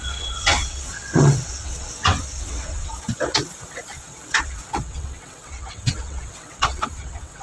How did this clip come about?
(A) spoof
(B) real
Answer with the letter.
A